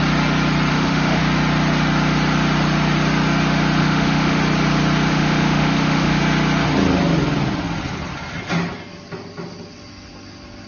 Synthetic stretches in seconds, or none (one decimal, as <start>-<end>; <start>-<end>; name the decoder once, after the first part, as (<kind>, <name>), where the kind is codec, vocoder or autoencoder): 0.7-1.2 (autoencoder, DAC-VAE); 3.8-4.4; 5.1-6.2